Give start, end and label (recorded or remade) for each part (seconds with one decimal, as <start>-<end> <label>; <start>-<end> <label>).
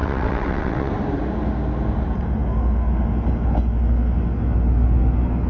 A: 0.0-0.9 remade; 0.9-5.5 recorded